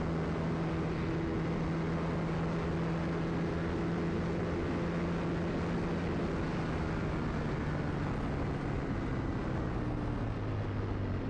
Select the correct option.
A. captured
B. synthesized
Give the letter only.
A